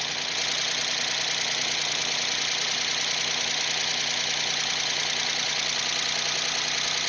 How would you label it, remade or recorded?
recorded